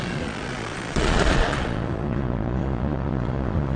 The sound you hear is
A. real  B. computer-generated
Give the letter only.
B